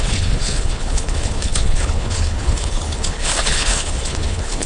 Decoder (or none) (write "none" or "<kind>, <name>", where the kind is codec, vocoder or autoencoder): codec, HILCodec